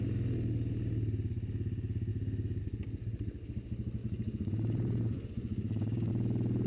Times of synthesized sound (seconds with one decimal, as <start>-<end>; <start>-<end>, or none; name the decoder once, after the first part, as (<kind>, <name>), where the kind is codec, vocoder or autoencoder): 4.0-6.1 (vocoder, Vocos)